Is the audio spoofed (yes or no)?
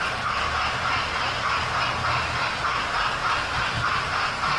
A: no